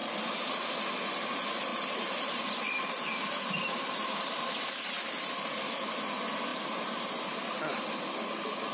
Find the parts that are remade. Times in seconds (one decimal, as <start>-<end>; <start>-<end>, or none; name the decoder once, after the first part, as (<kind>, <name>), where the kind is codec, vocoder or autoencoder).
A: 0.0-0.5 (vocoder, BigVGAN v2); 1.7-5.9; 6.5-7.4